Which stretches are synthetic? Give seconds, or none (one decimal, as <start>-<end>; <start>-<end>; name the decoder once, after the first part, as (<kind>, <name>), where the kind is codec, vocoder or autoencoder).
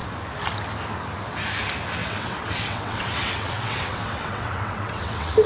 2.0-5.5 (vocoder, WaveNeXt)